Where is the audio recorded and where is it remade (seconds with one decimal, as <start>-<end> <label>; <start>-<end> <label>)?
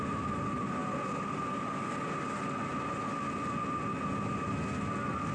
0.0-5.3 recorded